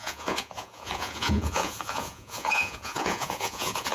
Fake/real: fake